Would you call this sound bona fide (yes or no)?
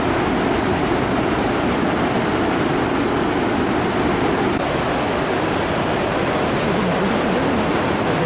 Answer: no